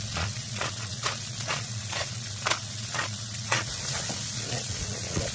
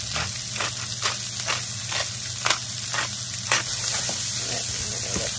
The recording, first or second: second